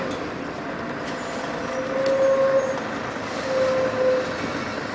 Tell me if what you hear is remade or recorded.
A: recorded